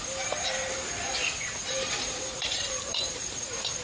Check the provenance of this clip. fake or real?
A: fake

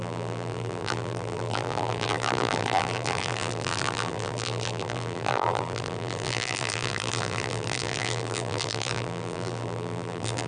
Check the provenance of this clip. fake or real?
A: fake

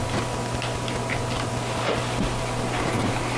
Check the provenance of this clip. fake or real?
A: real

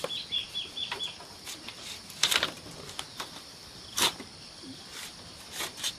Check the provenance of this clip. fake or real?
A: fake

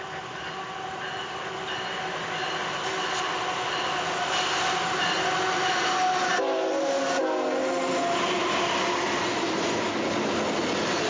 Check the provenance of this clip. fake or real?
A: real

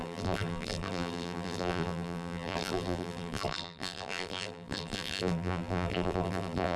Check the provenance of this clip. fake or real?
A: fake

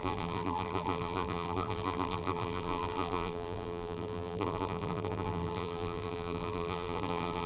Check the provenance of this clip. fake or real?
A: fake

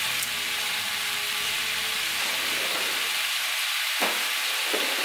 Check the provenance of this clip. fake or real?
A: fake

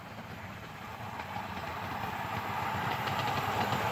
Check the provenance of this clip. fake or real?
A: real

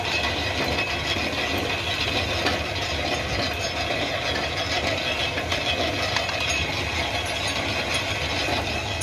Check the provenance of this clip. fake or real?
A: real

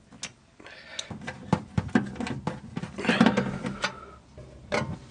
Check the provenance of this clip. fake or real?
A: real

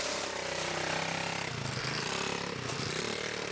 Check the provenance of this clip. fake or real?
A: real